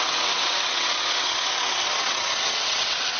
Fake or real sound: fake